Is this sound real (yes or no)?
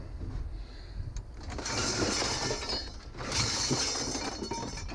yes